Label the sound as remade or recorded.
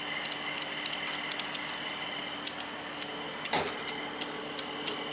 recorded